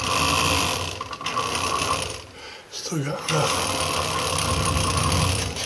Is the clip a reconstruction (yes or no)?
no